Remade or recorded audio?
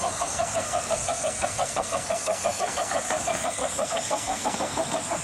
remade